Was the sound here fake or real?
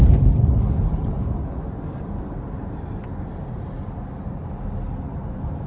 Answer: real